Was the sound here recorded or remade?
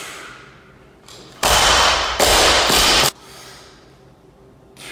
remade